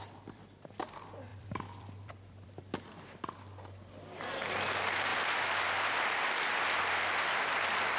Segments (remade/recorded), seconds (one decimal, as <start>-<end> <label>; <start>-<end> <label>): 0.0-0.8 remade; 0.8-1.3 recorded; 1.3-2.8 remade; 2.8-5.1 recorded; 5.1-6.4 remade; 6.4-8.0 recorded